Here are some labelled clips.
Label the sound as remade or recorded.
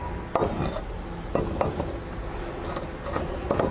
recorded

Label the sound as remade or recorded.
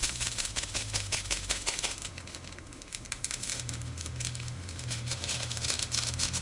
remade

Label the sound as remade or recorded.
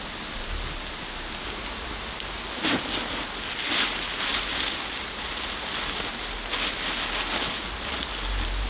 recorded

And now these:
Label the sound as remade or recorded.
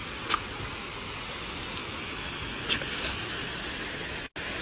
recorded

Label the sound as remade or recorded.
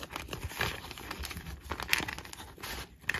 recorded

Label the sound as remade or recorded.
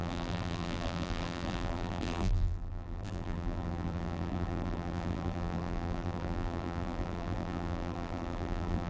remade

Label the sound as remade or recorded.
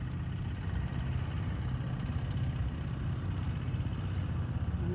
recorded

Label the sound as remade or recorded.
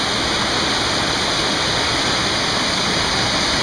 recorded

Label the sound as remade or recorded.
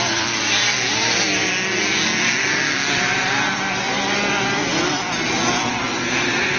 recorded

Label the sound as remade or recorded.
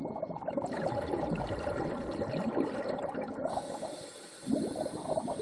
remade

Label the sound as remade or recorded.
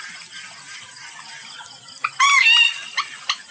recorded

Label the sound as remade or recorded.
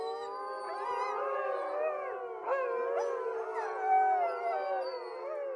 recorded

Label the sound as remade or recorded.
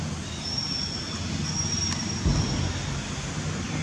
recorded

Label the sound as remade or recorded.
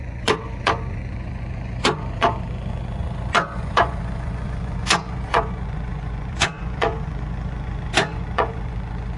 remade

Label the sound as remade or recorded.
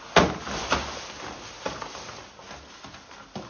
recorded